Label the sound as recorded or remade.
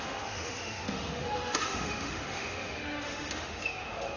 remade